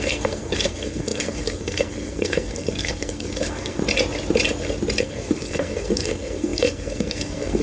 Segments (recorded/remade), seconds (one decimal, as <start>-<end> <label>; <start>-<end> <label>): 0.0-3.8 remade; 3.8-5.0 recorded; 5.0-7.6 remade

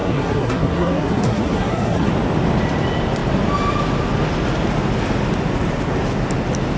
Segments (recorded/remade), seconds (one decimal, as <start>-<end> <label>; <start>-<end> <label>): 0.0-2.1 remade; 2.1-6.8 recorded

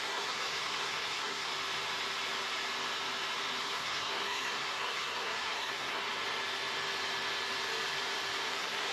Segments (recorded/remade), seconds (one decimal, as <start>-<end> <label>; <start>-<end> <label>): 0.0-1.5 remade; 1.5-3.6 recorded; 3.6-6.0 remade; 6.0-8.5 recorded; 8.5-8.9 remade

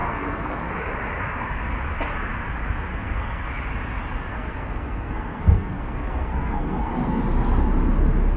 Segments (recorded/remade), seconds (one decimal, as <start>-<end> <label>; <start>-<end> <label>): 0.0-0.7 remade; 0.7-2.9 recorded; 2.9-3.5 remade; 3.5-4.3 recorded; 4.3-7.2 remade; 7.2-8.4 recorded

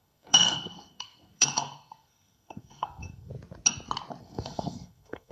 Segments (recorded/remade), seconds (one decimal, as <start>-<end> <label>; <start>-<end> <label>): 0.0-3.3 remade; 3.3-4.2 recorded; 4.2-5.3 remade

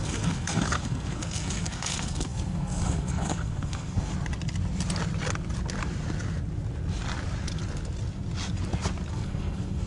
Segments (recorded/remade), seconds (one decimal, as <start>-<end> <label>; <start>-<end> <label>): 0.0-4.1 remade; 4.1-9.1 recorded; 9.1-9.9 remade

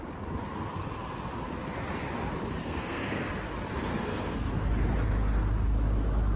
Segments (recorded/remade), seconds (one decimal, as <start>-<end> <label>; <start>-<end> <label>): 0.0-2.6 recorded; 2.6-3.3 remade; 3.3-3.9 recorded; 3.9-4.5 remade; 4.5-6.4 recorded